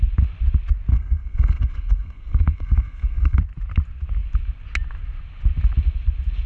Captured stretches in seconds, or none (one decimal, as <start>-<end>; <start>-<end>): 0.0-0.9; 3.4-6.5